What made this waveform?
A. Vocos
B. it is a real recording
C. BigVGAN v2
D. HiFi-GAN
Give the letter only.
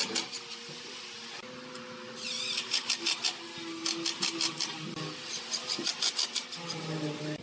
B